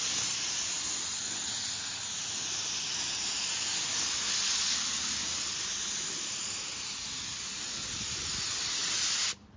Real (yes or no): yes